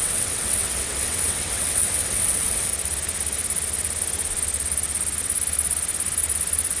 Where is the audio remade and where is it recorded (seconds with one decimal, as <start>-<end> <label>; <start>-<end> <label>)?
0.0-2.7 remade; 2.7-6.8 recorded